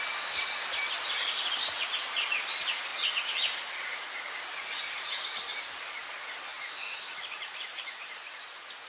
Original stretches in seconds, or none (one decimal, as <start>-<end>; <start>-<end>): 0.0-6.5; 8.3-8.9